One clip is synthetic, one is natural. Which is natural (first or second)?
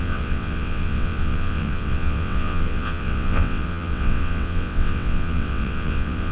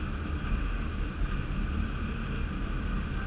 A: second